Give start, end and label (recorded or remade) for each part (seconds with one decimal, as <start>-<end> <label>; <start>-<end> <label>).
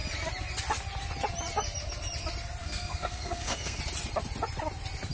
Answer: 0.0-2.6 recorded; 2.6-3.8 remade; 3.8-5.1 recorded